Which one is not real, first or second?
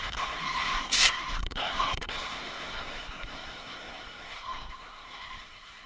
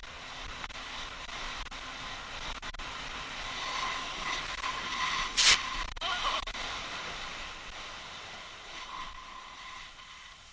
first